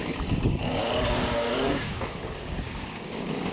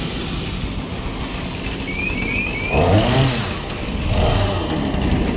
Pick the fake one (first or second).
first